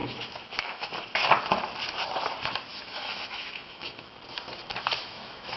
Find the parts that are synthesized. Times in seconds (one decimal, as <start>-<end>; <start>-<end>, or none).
0.0-0.9; 2.7-4.1; 5.0-5.6